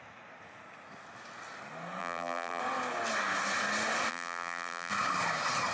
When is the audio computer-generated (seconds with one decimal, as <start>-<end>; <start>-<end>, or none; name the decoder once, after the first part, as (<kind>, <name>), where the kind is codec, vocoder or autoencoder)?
2.0-2.6 (vocoder, BigVGAN v2); 4.1-4.9